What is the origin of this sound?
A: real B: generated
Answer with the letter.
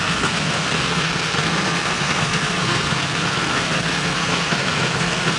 B